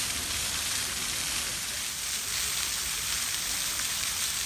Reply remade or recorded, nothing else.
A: recorded